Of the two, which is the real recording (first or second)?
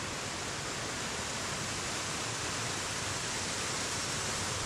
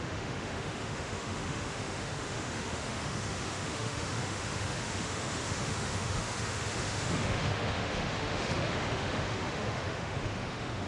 first